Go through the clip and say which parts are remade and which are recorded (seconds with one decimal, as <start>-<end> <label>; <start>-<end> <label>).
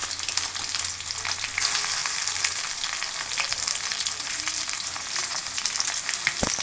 0.0-2.0 recorded; 2.0-2.6 remade; 2.6-3.9 recorded; 3.9-5.4 remade; 5.4-6.6 recorded